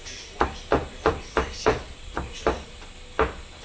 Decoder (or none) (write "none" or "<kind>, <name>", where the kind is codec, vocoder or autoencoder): vocoder, BigVGAN v2